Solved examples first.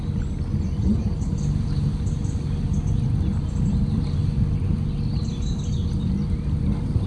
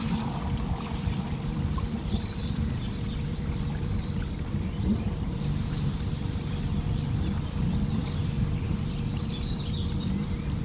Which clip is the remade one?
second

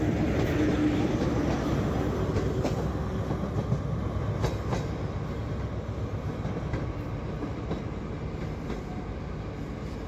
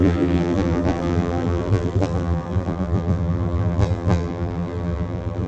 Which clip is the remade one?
second